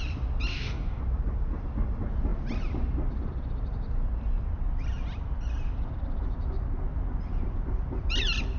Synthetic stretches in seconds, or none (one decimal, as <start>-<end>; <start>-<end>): 0.5-1.0